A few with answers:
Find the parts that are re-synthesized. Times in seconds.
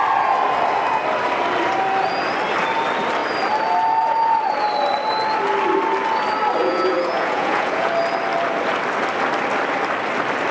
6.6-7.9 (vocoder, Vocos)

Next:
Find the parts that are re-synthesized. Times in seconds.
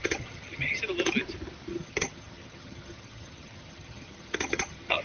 0.0-0.8 (vocoder, HiFi-GAN); 1.7-5.0